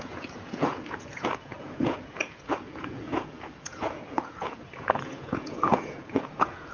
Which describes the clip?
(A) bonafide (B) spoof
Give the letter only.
B